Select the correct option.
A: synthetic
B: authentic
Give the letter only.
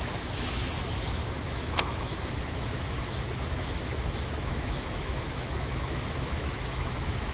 A